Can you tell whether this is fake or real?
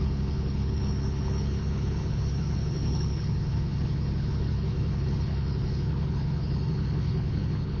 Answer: fake